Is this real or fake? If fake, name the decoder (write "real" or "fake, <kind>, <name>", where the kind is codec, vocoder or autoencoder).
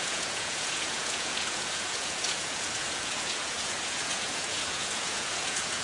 fake, vocoder, Vocos